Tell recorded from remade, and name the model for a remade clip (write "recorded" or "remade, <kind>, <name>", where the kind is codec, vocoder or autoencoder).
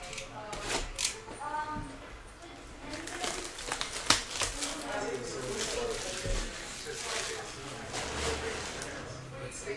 recorded